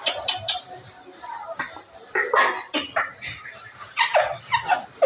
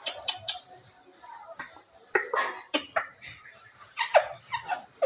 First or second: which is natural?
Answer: first